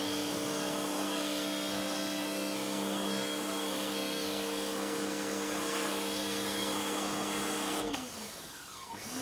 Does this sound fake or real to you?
fake